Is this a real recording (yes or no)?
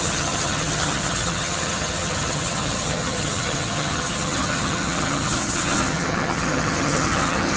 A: no